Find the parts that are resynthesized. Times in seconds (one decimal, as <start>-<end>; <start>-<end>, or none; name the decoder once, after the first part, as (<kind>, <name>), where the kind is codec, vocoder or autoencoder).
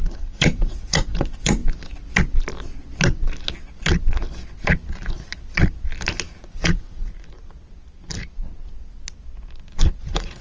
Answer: 0.0-1.6 (vocoder, Vocos); 6.5-7.1; 10.0-10.4